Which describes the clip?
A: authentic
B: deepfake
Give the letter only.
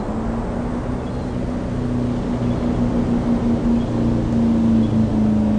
A